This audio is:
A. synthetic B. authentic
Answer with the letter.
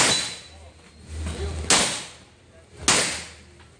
B